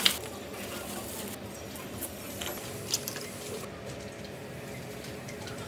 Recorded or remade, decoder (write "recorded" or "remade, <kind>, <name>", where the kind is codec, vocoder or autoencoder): recorded